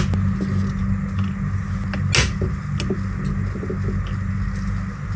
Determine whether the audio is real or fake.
real